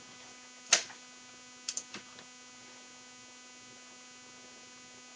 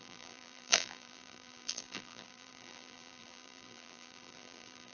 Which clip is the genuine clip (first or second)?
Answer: first